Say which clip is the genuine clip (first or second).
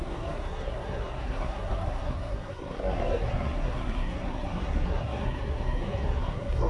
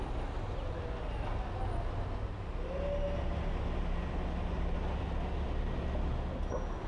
second